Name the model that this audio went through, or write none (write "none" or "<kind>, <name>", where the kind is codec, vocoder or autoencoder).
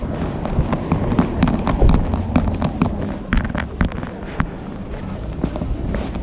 none